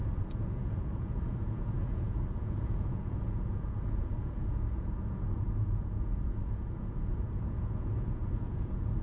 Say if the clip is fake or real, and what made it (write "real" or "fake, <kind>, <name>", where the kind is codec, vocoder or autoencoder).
fake, vocoder, Vocos